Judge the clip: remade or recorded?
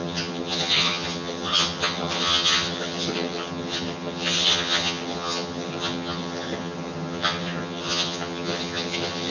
remade